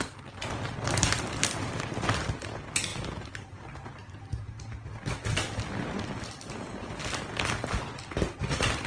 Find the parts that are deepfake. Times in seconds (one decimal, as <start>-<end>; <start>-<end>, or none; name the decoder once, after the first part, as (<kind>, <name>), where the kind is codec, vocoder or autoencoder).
none